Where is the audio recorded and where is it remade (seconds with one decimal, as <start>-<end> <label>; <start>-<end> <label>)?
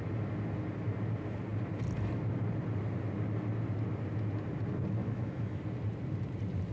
0.0-5.0 recorded; 5.0-5.6 remade; 5.6-6.7 recorded